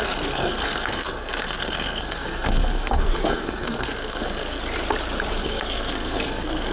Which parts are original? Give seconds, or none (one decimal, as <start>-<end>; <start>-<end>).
4.6-5.4